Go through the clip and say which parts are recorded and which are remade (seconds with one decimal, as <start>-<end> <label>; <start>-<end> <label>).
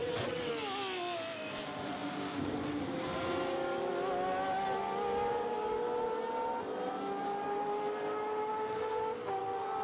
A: 0.0-0.5 remade; 0.5-9.8 recorded